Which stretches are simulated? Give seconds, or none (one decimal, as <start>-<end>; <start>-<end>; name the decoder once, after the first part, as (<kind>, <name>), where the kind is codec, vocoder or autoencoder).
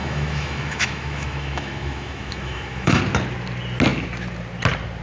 0.0-3.0 (autoencoder, DAC-VAE)